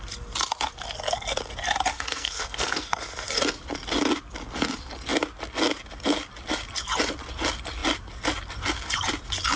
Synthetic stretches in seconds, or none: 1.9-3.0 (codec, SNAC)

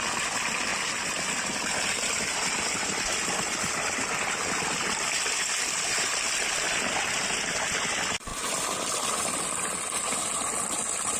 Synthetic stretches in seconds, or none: none

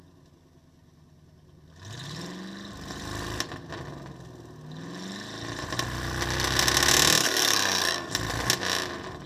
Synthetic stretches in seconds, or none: 7.2-8.1 (codec, SNAC)

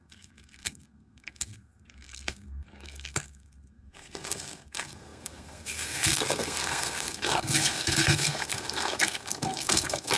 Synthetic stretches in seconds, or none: 0.0-10.2 (codec, SNAC)

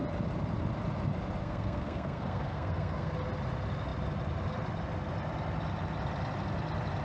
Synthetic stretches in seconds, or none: 1.4-3.1 (codec, SNAC)

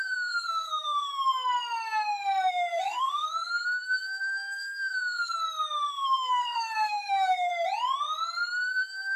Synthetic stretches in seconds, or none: 0.0-1.1 (codec, SNAC); 2.5-5.4; 5.9-7.5; 8.7-9.2

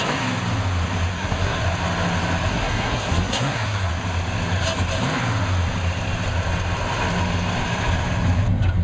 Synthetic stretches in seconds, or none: 1.1-1.6 (codec, SNAC); 2.5-3.9

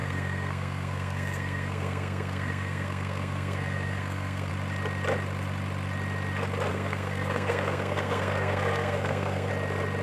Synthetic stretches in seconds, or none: 0.0-4.5 (codec, SNAC); 6.7-9.5